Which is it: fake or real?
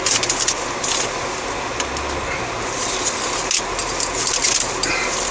real